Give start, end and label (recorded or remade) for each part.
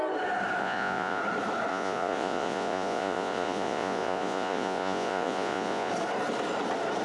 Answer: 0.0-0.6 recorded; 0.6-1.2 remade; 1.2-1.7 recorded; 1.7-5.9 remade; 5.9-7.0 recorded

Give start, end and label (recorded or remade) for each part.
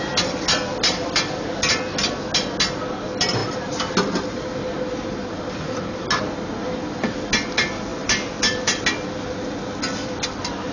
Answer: 0.0-10.7 recorded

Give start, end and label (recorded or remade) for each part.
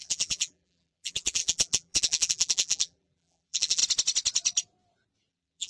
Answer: 0.0-3.8 remade; 3.8-5.3 recorded; 5.3-5.7 remade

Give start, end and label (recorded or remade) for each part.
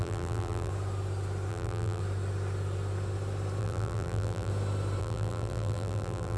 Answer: 0.0-0.7 remade; 0.7-1.5 recorded; 1.5-2.0 remade; 2.0-3.6 recorded; 3.6-4.5 remade; 4.5-5.0 recorded; 5.0-6.4 remade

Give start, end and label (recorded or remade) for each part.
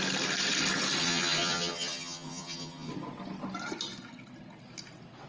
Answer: 0.0-1.0 recorded; 1.0-2.9 remade; 2.9-5.3 recorded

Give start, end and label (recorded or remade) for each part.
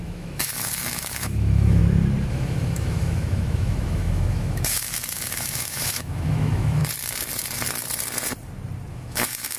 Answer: 0.0-1.8 remade; 1.8-2.3 recorded; 2.3-6.8 remade; 6.8-8.9 recorded; 8.9-9.6 remade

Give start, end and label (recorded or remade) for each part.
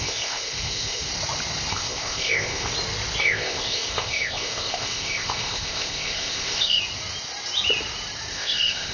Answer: 0.0-1.1 remade; 1.1-1.7 recorded; 1.7-2.7 remade; 2.7-3.2 recorded; 3.2-6.8 remade; 6.8-8.3 recorded; 8.3-8.9 remade